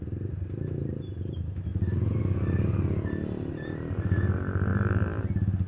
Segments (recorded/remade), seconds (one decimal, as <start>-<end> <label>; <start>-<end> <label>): 0.0-5.7 recorded